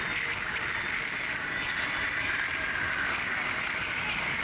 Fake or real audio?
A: real